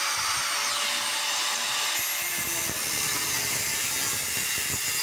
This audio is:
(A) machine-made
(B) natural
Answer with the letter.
B